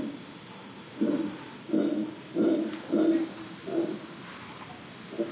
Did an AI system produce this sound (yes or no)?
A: no